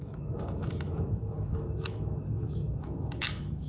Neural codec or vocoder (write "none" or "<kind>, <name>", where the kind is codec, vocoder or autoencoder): autoencoder, DAC-VAE